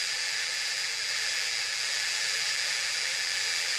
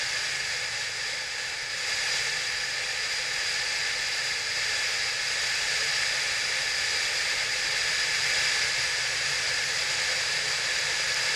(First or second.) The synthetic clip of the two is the first